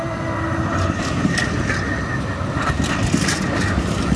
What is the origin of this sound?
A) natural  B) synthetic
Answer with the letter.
A